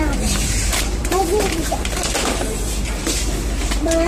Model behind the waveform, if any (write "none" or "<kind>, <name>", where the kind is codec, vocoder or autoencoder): vocoder, BigVGAN v2